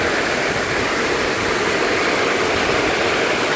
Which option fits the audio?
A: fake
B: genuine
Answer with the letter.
B